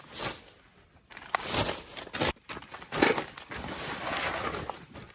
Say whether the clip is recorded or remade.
recorded